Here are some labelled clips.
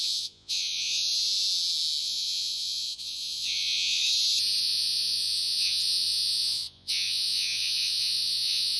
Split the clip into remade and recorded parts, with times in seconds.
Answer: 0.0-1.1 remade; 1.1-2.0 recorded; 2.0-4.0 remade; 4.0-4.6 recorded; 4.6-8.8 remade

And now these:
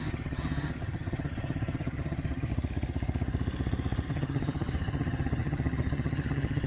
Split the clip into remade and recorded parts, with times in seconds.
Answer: 0.0-2.5 remade; 2.5-4.1 recorded; 4.1-6.7 remade

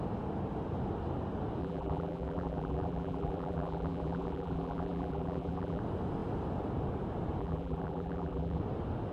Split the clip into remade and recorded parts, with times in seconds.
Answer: 0.0-1.6 recorded; 1.6-5.8 remade; 5.8-7.4 recorded; 7.4-8.6 remade; 8.6-9.1 recorded

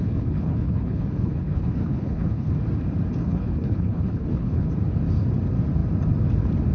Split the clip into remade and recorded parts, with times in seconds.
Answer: 0.0-2.5 remade; 2.5-3.2 recorded; 3.2-4.7 remade; 4.7-6.7 recorded

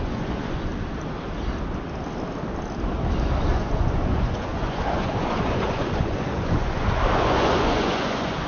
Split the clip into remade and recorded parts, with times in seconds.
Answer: 0.0-0.7 remade; 0.7-3.5 recorded; 3.5-8.5 remade

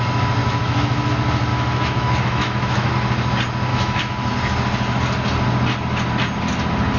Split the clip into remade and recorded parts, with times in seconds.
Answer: 0.0-0.4 recorded; 0.4-1.1 remade; 1.1-1.5 recorded; 1.5-2.9 remade; 2.9-3.7 recorded; 3.7-4.3 remade; 4.3-7.0 recorded

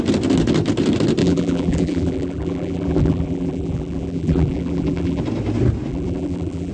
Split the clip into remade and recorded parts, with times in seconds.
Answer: 0.0-1.2 recorded; 1.2-5.2 remade; 5.2-5.9 recorded; 5.9-6.7 remade

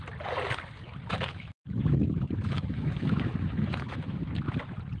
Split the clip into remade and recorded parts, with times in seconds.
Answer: 0.0-1.1 recorded; 1.1-4.1 remade; 4.1-5.0 recorded